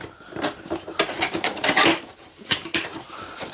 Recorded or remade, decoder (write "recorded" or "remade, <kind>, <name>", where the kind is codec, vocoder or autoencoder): remade, vocoder, BigVGAN v2